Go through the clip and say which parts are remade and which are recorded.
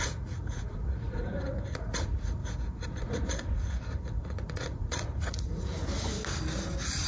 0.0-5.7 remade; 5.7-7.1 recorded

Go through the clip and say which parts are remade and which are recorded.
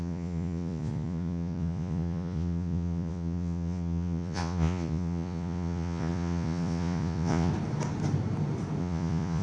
0.0-7.5 remade; 7.5-8.8 recorded; 8.8-9.4 remade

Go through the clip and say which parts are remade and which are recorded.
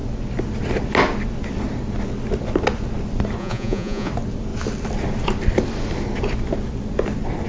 0.0-3.4 recorded; 3.4-4.1 remade; 4.1-7.5 recorded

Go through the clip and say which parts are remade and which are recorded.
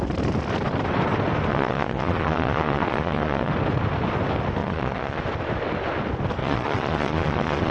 0.0-1.5 recorded; 1.5-3.5 remade; 3.5-4.6 recorded; 4.6-5.2 remade; 5.2-6.4 recorded; 6.4-7.7 remade